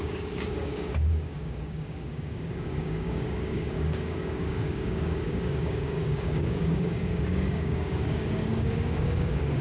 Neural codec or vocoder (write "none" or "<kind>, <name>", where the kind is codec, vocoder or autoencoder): codec, DAC